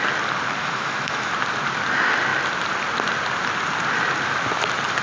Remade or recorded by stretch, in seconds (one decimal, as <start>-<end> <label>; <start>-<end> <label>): 0.0-0.6 recorded; 0.6-1.3 remade; 1.3-5.0 recorded